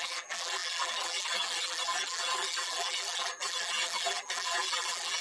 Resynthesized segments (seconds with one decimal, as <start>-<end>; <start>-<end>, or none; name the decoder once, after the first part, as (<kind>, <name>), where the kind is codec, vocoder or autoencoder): 0.0-5.2 (vocoder, BigVGAN v2)